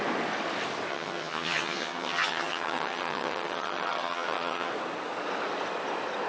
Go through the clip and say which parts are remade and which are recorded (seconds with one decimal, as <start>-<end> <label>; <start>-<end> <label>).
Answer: 0.0-0.9 recorded; 0.9-4.7 remade; 4.7-6.3 recorded